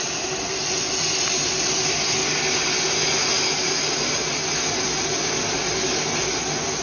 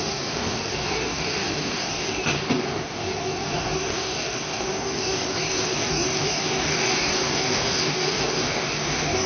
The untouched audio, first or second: first